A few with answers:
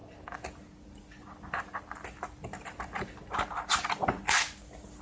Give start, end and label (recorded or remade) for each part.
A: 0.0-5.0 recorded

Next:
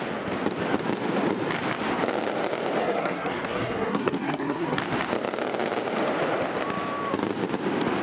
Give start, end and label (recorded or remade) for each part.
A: 0.0-2.8 recorded; 2.8-4.8 remade; 4.8-8.0 recorded